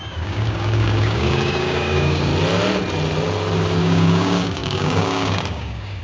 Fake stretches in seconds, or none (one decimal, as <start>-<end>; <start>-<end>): 0.0-2.3; 3.8-6.0

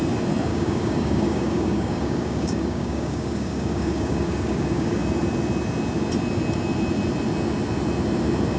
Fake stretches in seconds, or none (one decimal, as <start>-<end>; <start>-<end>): 0.5-5.0